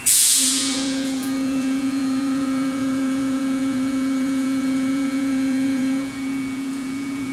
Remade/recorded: remade